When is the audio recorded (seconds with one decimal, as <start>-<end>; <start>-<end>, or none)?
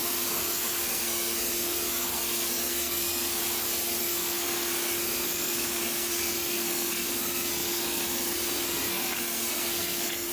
3.4-4.0